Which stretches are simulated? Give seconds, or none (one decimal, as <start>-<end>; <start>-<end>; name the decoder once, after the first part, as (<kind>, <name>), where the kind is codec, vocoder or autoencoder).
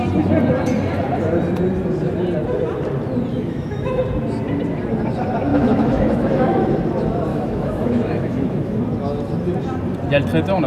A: 3.3-4.0 (autoencoder, DAC-VAE); 5.5-6.7; 7.3-8.8